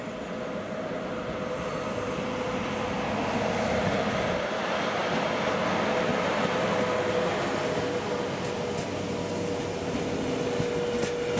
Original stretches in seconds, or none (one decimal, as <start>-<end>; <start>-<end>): 0.0-11.4